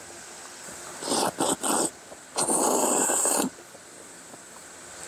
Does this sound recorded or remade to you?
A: recorded